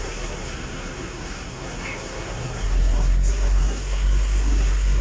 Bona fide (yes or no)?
no